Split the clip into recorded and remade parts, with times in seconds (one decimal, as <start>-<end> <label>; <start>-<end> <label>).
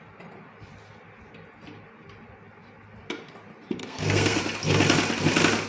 0.0-3.8 recorded; 3.8-4.4 remade; 4.4-5.7 recorded